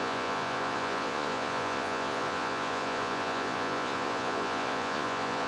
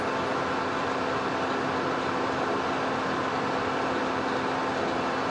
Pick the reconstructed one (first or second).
first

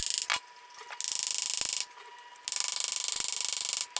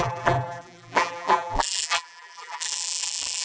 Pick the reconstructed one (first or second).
second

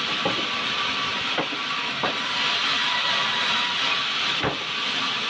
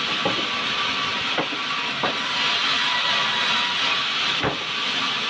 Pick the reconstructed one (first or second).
first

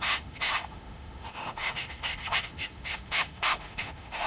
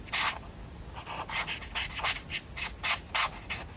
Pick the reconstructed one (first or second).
first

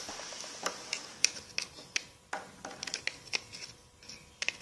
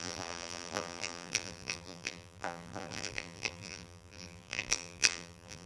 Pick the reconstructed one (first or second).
second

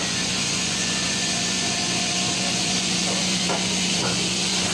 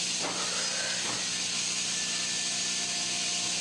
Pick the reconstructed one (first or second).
first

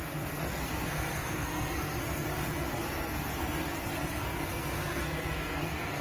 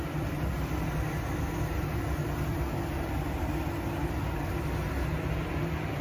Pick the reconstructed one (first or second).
first